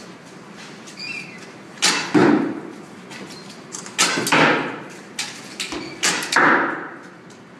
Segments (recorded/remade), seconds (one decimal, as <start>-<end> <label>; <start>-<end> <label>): 0.0-7.6 recorded